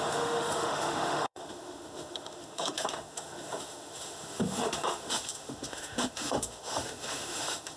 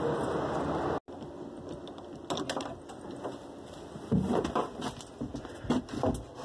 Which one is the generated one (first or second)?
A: first